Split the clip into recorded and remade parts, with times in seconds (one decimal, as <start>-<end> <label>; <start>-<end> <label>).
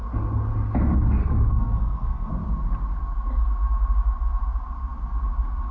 0.0-1.2 recorded; 1.2-2.3 remade; 2.3-5.7 recorded